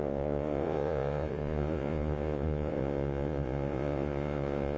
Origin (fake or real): fake